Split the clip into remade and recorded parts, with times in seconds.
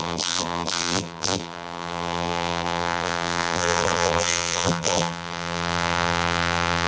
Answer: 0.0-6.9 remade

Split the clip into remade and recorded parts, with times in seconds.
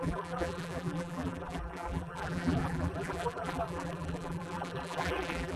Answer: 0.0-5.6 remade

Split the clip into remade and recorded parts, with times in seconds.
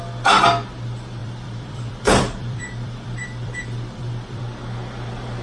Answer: 0.0-1.2 recorded; 1.2-4.4 remade; 4.4-5.4 recorded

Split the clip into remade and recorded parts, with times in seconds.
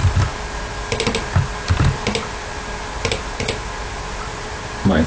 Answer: 0.0-3.1 recorded; 3.1-5.1 remade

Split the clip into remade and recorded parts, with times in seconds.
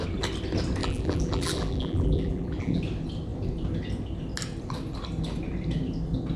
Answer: 0.0-0.8 recorded; 0.8-2.8 remade; 2.8-6.4 recorded